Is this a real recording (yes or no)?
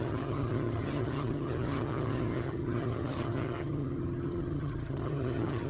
no